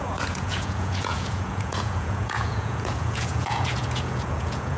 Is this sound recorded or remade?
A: remade